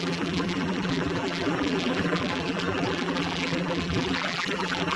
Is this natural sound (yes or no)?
no